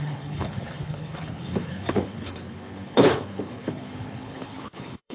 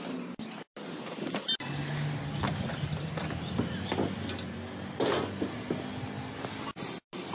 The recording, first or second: second